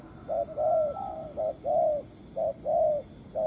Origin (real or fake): real